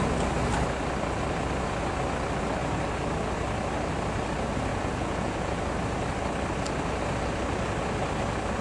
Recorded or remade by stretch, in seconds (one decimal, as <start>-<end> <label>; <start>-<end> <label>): 0.0-4.7 recorded; 4.7-5.6 remade; 5.6-8.6 recorded